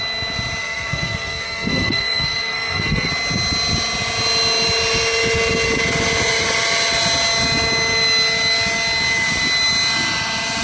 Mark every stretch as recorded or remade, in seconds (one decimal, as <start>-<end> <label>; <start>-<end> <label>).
0.0-0.6 recorded; 0.6-3.1 remade; 3.1-10.6 recorded